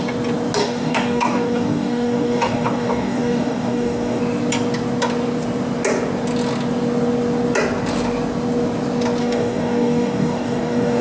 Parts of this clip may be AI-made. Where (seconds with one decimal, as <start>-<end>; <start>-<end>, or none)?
0.6-4.2; 9.2-11.0